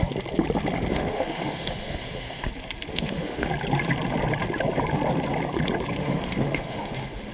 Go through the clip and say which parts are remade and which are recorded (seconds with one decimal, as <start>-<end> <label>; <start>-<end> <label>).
0.0-0.9 recorded; 0.9-2.5 remade; 2.5-2.9 recorded; 2.9-3.5 remade; 3.5-6.0 recorded; 6.0-7.3 remade